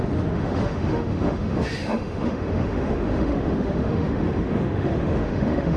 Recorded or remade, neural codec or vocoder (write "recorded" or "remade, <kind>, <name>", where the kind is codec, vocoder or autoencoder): remade, autoencoder, DAC-VAE